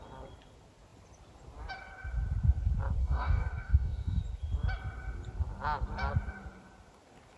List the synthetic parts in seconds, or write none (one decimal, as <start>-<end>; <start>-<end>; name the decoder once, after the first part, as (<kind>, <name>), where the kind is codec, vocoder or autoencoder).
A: 3.0-4.2 (codec, DAC)